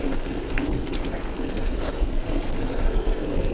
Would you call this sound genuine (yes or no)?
no